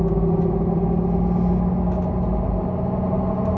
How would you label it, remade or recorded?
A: recorded